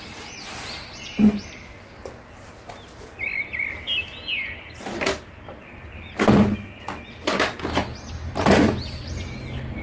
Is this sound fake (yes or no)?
no